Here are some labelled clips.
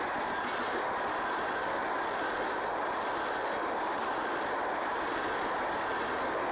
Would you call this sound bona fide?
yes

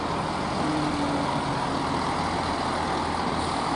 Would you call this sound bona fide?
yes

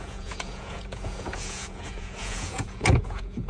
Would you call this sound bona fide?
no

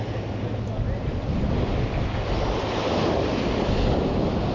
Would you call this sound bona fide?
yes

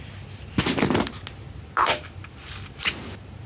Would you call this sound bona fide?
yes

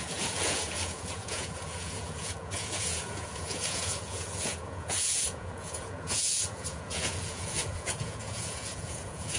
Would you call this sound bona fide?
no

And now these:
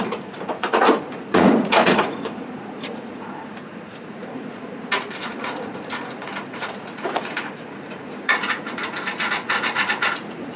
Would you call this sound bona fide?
no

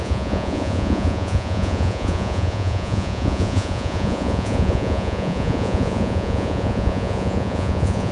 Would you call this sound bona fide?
no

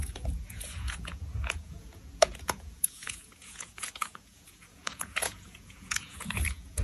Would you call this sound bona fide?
no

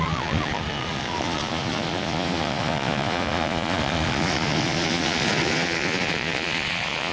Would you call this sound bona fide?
no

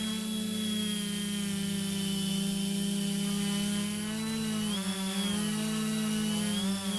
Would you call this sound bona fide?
yes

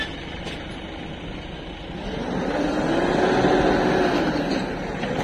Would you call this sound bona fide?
yes